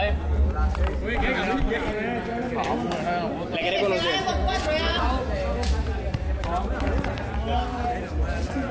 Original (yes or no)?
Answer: yes